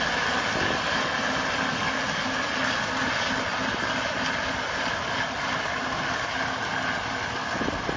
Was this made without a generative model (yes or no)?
yes